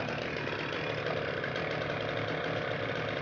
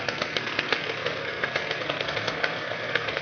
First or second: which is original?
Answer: first